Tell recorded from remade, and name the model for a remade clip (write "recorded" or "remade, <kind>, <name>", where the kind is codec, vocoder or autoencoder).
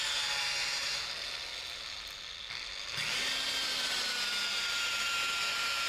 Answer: recorded